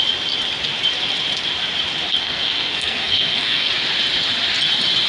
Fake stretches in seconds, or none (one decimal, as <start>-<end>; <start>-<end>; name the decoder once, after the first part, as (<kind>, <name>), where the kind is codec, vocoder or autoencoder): 2.2-3.7 (codec, SNAC)